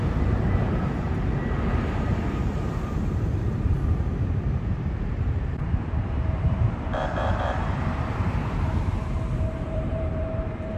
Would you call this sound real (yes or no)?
no